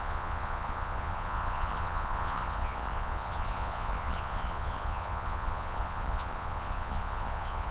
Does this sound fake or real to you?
fake